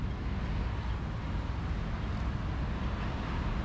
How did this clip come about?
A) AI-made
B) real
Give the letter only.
B